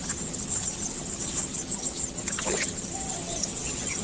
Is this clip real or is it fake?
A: fake